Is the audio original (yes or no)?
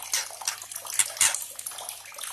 yes